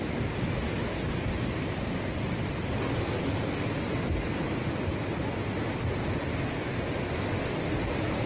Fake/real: real